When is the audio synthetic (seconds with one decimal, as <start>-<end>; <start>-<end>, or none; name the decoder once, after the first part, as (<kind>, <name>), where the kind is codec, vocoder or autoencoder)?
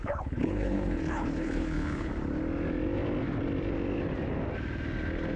0.0-2.1 (codec, HILCodec)